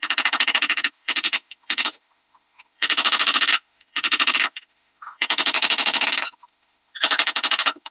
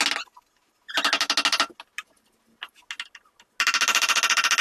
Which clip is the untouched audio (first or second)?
second